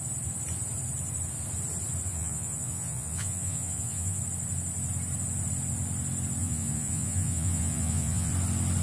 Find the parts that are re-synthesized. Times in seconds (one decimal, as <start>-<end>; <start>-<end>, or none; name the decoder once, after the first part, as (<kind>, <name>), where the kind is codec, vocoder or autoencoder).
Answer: 2.1-4.2 (vocoder, Vocos); 6.4-8.3